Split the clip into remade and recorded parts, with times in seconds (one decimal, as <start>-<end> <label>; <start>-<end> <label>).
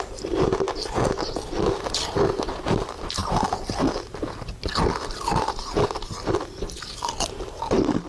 0.0-8.1 recorded